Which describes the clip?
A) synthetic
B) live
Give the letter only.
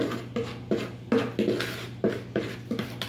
B